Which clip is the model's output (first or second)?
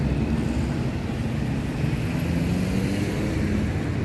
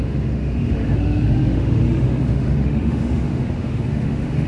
second